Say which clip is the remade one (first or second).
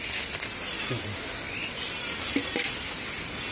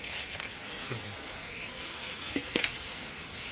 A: second